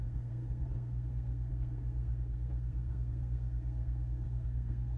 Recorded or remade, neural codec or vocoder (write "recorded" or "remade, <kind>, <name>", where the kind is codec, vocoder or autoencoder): remade, codec, SNAC